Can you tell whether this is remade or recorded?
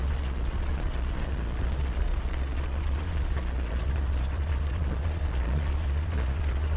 remade